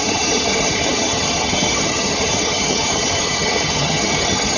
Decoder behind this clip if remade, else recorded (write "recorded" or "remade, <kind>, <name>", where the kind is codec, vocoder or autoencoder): remade, vocoder, HiFi-GAN